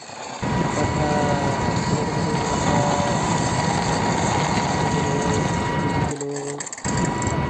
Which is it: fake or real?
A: real